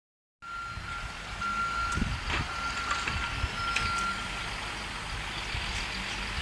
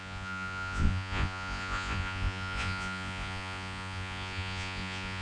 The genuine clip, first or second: first